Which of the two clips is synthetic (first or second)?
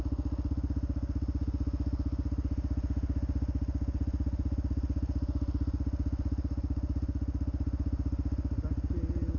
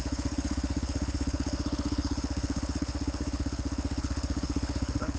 second